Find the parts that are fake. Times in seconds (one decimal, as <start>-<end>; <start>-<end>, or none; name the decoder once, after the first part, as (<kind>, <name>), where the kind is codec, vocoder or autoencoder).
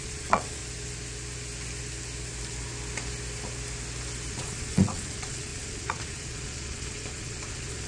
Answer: 0.0-0.6 (vocoder, Vocos); 4.3-7.9